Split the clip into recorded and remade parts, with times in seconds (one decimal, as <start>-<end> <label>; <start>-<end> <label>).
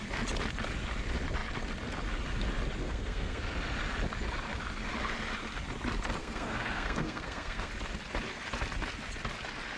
0.0-2.8 recorded; 2.8-3.4 remade; 3.4-6.2 recorded; 6.2-7.7 remade; 7.7-9.8 recorded